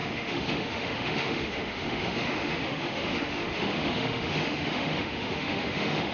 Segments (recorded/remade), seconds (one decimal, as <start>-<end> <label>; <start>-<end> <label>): 0.0-6.1 remade

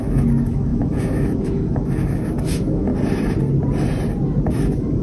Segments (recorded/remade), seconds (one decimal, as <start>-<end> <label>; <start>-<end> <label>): 0.0-2.9 remade; 2.9-4.5 recorded; 4.5-5.0 remade

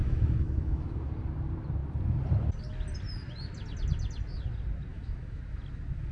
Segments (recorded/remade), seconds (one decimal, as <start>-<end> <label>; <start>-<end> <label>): 0.0-1.1 remade; 1.1-4.9 recorded; 4.9-5.4 remade; 5.4-6.1 recorded

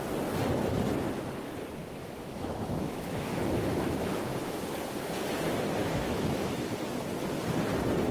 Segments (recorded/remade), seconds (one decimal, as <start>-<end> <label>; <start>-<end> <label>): 0.0-1.8 recorded; 1.8-4.6 remade; 4.6-5.8 recorded; 5.8-6.7 remade; 6.7-8.1 recorded

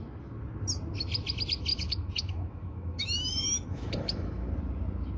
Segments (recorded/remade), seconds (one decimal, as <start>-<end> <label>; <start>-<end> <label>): 0.0-1.7 recorded; 1.7-4.5 remade; 4.5-5.2 recorded

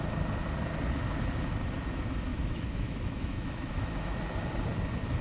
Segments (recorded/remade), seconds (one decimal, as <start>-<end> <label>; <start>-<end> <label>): 0.0-2.3 recorded; 2.3-4.2 remade; 4.2-5.2 recorded